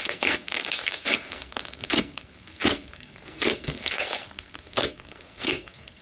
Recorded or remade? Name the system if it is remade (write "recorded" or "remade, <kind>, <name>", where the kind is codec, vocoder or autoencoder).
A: remade, codec, SNAC